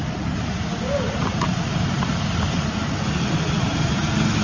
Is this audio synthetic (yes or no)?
no